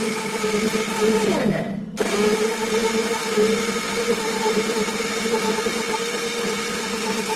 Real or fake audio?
real